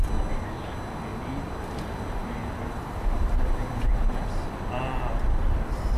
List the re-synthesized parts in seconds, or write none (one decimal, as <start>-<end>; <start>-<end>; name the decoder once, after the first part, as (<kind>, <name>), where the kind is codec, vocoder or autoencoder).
1.1-1.8 (vocoder, BigVGAN v2); 2.2-6.0